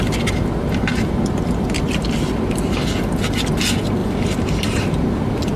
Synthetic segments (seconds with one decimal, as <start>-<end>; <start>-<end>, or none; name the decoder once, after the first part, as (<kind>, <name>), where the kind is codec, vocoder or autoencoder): 0.9-1.8 (vocoder, BigVGAN v2); 4.0-5.6